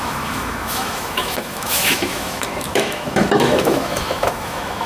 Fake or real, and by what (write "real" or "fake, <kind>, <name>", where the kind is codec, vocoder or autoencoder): fake, autoencoder, DAC-VAE